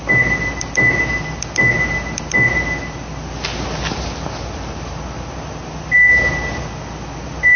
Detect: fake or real real